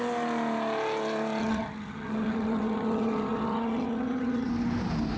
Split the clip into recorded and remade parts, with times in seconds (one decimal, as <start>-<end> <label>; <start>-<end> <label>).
0.0-1.4 recorded; 1.4-4.5 remade; 4.5-5.2 recorded